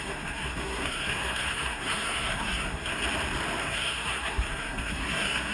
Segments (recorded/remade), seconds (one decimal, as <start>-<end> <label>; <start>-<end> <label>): 0.0-3.0 remade; 3.0-3.6 recorded; 3.6-5.5 remade